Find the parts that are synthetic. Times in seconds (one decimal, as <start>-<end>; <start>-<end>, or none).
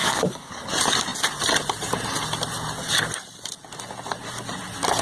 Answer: 0.0-0.7